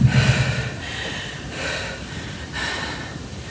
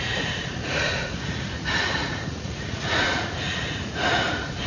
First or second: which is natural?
first